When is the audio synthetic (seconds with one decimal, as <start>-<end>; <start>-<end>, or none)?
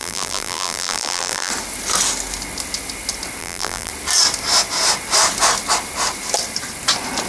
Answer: 0.0-1.5; 3.4-3.9